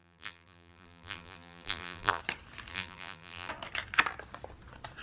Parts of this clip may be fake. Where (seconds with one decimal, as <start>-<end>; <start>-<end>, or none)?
0.0-2.2; 2.7-3.5